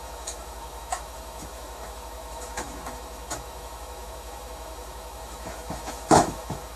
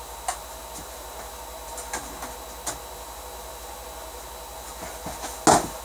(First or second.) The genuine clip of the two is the second